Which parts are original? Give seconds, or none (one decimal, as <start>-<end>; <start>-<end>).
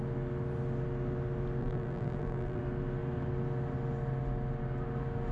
0.0-1.6; 2.6-5.3